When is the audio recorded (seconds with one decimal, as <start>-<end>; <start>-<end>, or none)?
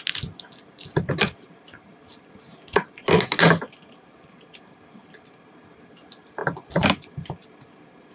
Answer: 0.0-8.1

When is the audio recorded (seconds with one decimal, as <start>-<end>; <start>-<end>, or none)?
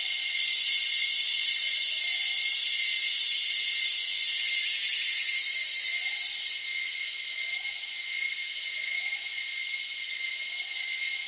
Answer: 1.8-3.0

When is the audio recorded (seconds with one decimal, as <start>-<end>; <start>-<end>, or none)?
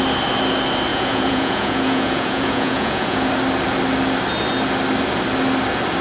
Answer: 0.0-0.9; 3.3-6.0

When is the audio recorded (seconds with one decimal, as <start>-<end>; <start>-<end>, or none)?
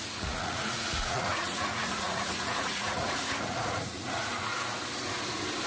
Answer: 4.5-5.7